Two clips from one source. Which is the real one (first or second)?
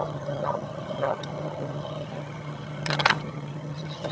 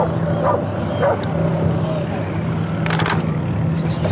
second